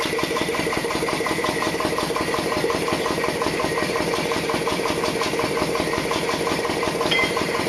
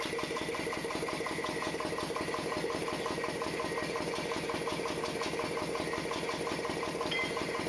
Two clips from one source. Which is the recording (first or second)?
second